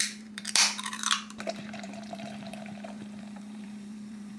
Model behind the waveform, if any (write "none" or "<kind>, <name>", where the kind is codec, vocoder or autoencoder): vocoder, BigVGAN v2